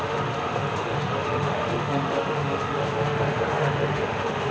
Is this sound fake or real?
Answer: fake